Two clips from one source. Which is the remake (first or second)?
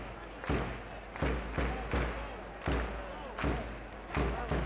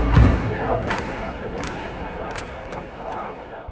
second